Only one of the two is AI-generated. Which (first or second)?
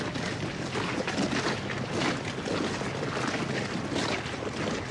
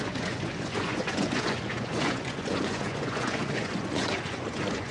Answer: second